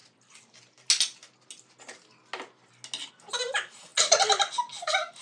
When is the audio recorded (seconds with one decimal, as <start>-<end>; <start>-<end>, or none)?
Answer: 0.0-5.2